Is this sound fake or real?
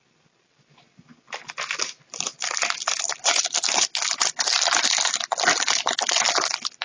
real